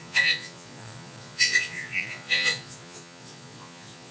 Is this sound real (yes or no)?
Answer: no